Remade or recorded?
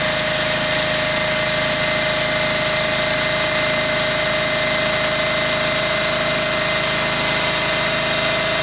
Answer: recorded